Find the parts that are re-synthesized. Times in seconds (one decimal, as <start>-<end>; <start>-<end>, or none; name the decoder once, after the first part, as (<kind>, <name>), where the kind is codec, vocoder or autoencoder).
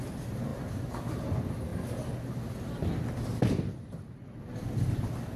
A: none